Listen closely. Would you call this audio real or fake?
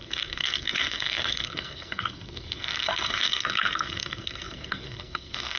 fake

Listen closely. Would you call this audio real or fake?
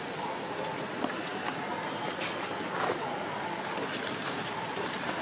real